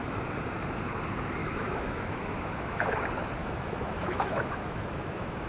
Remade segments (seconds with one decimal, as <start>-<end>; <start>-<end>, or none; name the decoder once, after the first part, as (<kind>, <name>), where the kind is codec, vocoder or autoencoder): 1.4-2.9 (autoencoder, DAC-VAE); 3.4-5.5